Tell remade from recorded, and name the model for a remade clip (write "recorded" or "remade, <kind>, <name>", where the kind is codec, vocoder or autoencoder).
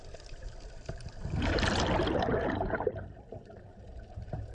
remade, vocoder, BigVGAN v2